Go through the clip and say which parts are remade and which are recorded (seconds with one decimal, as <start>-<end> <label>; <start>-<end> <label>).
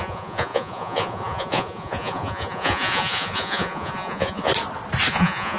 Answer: 0.0-4.5 remade; 4.5-5.1 recorded; 5.1-5.6 remade